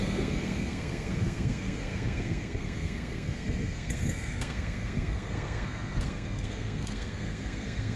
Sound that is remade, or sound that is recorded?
remade